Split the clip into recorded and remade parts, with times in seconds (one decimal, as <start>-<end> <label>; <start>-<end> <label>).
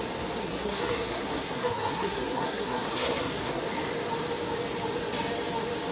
0.0-0.4 recorded; 0.4-3.6 remade; 3.6-5.9 recorded